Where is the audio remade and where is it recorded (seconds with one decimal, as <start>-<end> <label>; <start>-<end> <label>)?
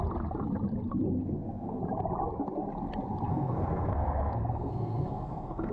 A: 0.0-1.2 recorded; 1.2-1.8 remade; 1.8-3.3 recorded; 3.3-5.7 remade